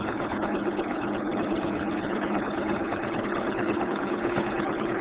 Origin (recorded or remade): remade